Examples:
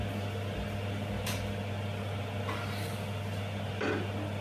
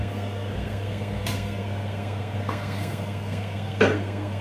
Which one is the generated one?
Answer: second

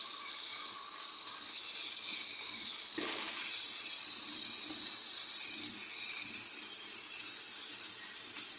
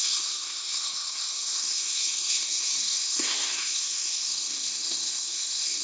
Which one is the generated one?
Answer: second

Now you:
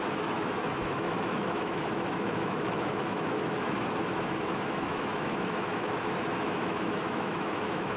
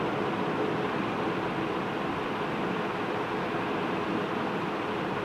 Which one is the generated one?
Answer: first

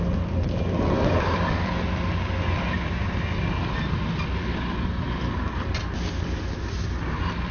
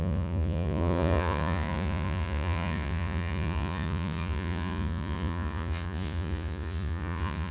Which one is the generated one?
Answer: second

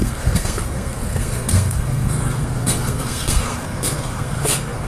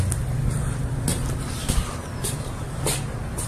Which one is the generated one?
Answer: first